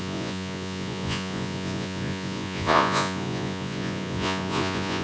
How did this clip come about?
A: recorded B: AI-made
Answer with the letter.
B